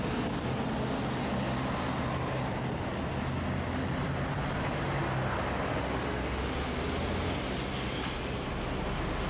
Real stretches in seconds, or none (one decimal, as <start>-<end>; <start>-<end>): 0.0-9.3